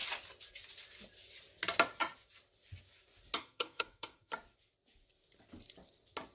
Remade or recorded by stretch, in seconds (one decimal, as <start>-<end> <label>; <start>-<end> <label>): 0.0-3.4 recorded; 3.4-4.3 remade; 4.3-6.3 recorded